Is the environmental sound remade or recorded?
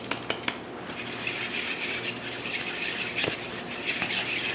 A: recorded